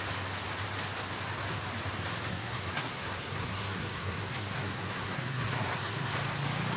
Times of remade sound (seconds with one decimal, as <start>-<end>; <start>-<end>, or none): 2.3-6.1